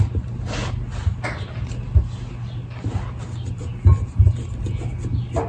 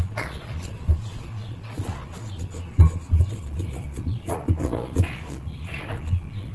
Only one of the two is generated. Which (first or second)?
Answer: second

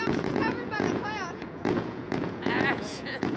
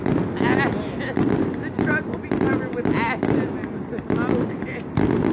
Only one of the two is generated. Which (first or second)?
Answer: first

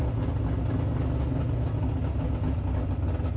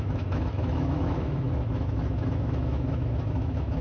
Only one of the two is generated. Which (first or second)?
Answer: second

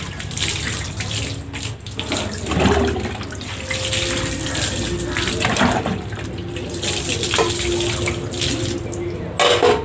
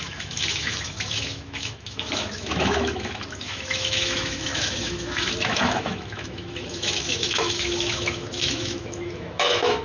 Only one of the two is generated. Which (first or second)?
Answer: second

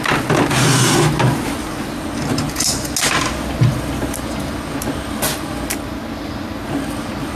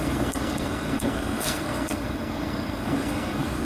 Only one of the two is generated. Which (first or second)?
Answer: second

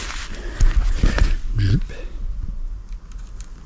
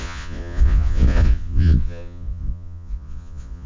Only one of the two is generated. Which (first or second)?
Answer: second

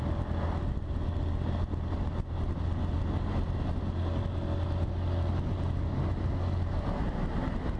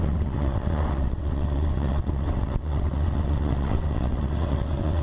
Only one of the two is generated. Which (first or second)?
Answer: second